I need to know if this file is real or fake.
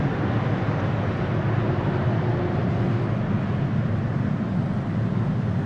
real